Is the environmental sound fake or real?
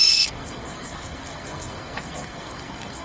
fake